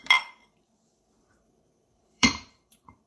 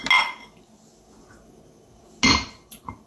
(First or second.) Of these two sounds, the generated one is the first